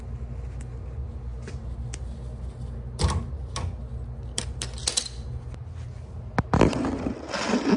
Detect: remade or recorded recorded